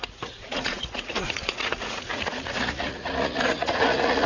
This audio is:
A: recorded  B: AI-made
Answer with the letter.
B